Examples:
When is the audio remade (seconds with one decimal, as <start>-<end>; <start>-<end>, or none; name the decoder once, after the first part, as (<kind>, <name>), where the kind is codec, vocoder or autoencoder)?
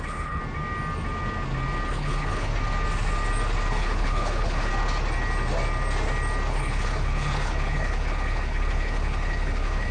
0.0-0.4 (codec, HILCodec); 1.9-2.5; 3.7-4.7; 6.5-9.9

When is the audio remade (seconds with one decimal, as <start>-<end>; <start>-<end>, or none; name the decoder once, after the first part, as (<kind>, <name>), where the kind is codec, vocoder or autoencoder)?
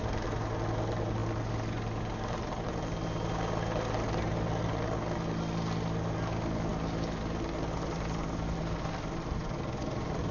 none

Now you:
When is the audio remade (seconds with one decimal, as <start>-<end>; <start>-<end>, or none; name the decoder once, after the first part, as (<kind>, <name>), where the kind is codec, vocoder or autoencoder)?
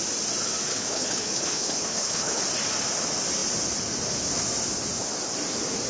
0.7-2.4 (codec, HILCodec)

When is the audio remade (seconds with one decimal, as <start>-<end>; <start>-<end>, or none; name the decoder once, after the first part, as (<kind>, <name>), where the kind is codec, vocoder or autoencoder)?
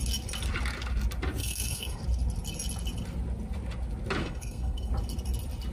1.4-2.0 (codec, SNAC); 4.2-4.9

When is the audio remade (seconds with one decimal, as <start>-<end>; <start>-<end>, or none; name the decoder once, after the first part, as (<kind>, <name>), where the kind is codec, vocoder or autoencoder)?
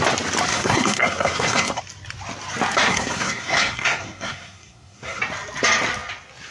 0.5-1.8 (codec, SNAC); 2.9-5.2